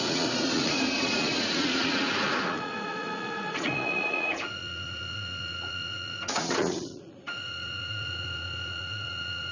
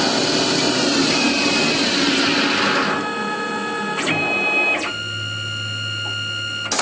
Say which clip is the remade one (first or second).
first